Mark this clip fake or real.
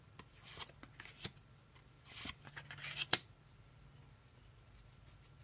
real